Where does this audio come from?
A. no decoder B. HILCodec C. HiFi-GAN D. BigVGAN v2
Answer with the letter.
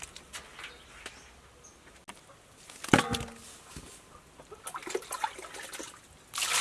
A